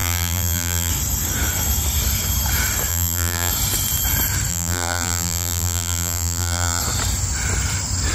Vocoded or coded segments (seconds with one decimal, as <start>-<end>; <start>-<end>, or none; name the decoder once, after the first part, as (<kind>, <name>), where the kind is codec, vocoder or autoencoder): 0.0-0.9 (vocoder, BigVGAN v2); 2.9-3.5; 4.5-6.8